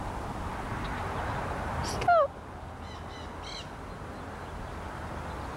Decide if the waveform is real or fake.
real